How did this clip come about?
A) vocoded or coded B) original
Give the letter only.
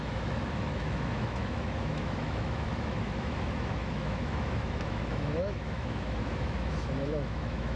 A